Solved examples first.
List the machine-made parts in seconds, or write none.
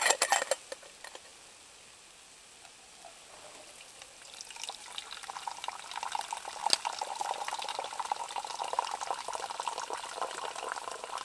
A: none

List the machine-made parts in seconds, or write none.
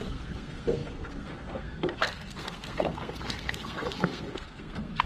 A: 0.0-5.1 (codec, SNAC)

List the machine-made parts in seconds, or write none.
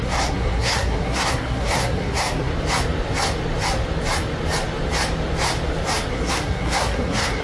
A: 0.0-2.5 (codec, SNAC); 6.1-7.4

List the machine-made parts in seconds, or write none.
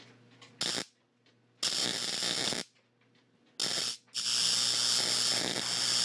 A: none